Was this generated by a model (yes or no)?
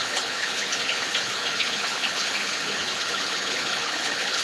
yes